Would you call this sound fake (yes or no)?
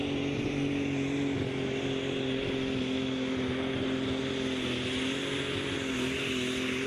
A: no